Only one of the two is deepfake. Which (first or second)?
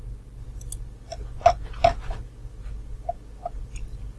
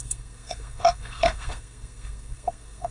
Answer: second